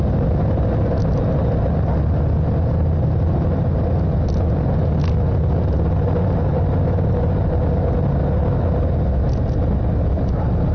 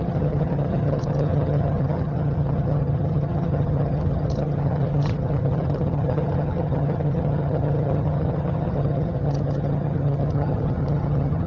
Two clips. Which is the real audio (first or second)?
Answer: first